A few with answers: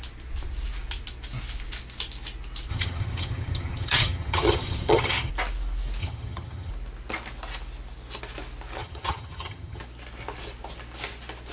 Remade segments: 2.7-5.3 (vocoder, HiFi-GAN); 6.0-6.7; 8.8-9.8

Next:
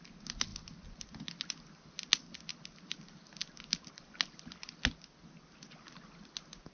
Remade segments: none

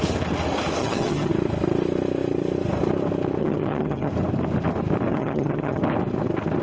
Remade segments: 0.8-1.3 (vocoder, HiFi-GAN); 3.4-4.1; 5.1-5.8

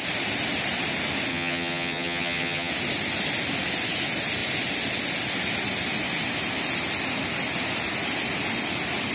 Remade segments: 1.3-2.7 (vocoder, HiFi-GAN)

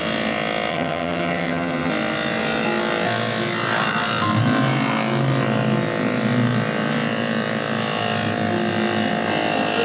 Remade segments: 0.7-1.9 (vocoder, HiFi-GAN)

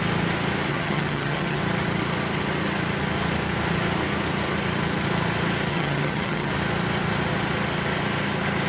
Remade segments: 0.7-1.6 (vocoder, HiFi-GAN); 5.7-6.5

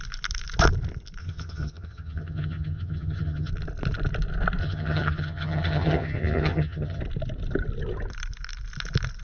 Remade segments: 1.2-3.5 (vocoder, HiFi-GAN); 4.6-7.0

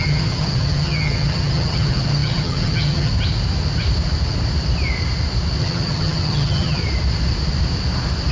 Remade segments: 0.0-3.1 (vocoder, HiFi-GAN); 5.6-6.8